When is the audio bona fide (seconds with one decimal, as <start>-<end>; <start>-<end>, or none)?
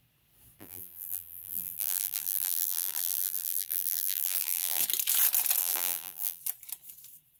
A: 0.0-0.6; 4.8-5.6; 6.4-7.4